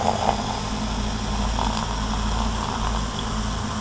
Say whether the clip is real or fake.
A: real